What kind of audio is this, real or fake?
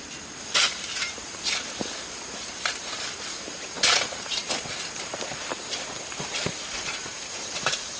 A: fake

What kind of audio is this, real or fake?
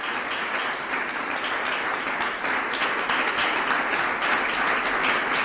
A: real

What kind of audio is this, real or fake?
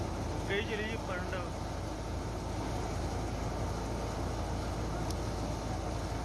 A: real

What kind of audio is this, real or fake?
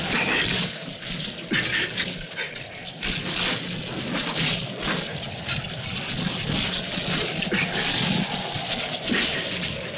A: real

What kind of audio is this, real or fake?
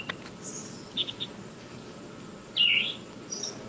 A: real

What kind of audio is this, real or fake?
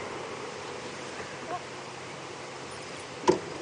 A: fake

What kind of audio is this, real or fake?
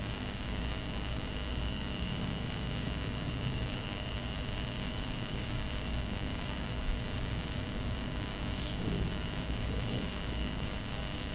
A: fake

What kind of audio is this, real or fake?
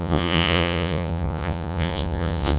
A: fake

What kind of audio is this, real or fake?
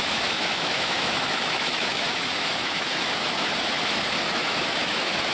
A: fake